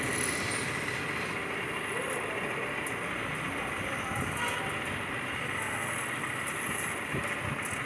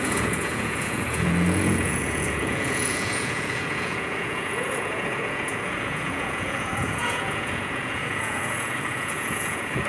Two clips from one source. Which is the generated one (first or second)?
second